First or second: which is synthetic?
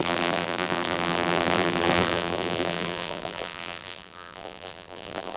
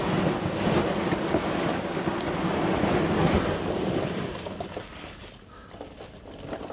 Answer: first